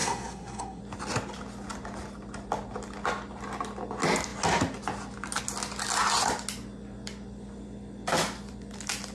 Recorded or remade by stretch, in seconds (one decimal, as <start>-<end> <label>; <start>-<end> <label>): 0.0-0.8 remade; 0.8-9.1 recorded